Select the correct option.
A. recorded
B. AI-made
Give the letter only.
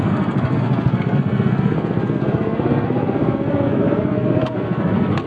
B